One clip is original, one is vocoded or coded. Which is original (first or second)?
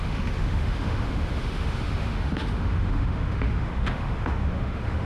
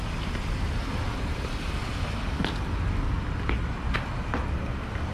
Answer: second